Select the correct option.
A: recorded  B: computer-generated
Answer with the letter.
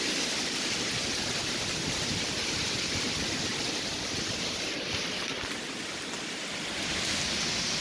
A